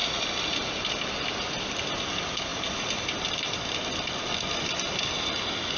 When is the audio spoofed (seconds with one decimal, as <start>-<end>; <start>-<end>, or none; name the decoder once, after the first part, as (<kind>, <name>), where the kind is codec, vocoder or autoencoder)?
none